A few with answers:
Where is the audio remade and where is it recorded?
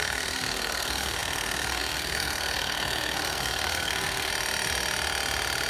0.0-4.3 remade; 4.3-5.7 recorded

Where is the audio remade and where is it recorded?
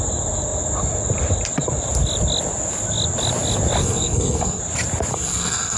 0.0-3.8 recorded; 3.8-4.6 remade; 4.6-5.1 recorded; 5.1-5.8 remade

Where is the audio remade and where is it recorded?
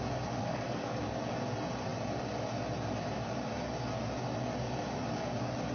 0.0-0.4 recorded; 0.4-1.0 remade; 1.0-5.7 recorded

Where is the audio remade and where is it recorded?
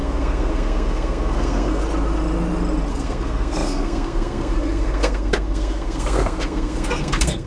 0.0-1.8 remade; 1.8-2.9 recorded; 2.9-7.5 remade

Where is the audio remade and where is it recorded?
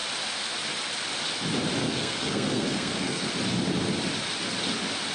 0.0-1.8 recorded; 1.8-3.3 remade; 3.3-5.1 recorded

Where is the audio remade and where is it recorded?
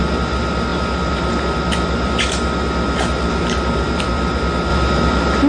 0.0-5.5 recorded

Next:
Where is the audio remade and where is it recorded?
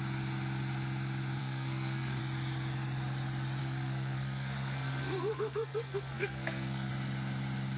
0.0-1.4 recorded; 1.4-2.2 remade; 2.2-3.6 recorded; 3.6-6.9 remade; 6.9-7.8 recorded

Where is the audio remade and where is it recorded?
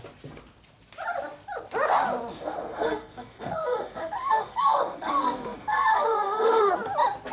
0.0-2.3 recorded; 2.3-6.7 remade; 6.7-7.3 recorded